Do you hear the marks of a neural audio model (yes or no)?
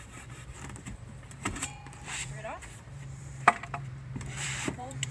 yes